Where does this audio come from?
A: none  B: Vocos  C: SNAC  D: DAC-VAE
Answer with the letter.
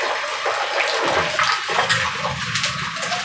A